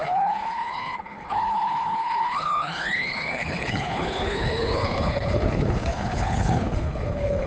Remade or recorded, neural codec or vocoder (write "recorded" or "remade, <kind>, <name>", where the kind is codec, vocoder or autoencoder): remade, codec, HILCodec